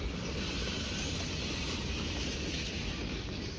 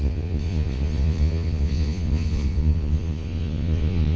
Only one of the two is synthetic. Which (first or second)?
second